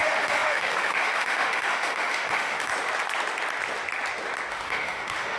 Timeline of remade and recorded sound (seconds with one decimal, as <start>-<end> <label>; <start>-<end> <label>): 0.0-2.7 remade; 2.7-4.5 recorded; 4.5-5.4 remade